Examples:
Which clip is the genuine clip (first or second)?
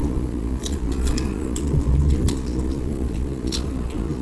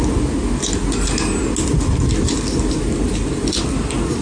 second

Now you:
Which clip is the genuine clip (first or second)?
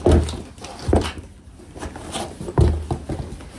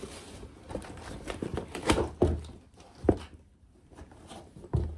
first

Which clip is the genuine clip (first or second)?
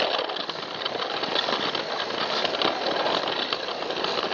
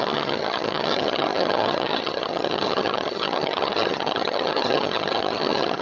first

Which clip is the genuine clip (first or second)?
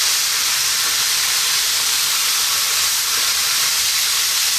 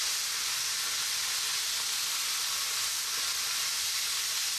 second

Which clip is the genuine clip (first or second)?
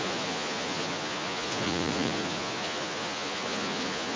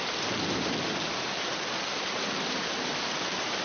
second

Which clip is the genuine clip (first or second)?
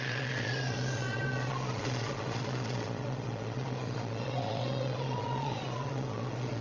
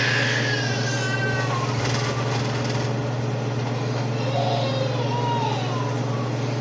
second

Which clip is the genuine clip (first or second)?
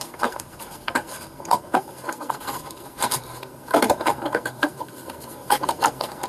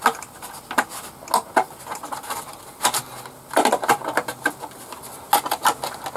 second